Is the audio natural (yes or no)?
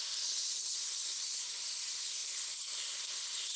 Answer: no